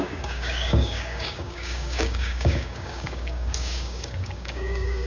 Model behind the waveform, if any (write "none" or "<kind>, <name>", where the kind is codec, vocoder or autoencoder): codec, DAC